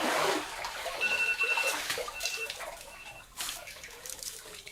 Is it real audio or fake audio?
fake